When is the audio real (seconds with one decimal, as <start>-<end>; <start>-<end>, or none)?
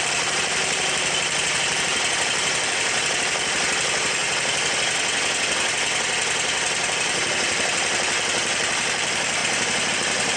4.2-6.9; 9.4-9.9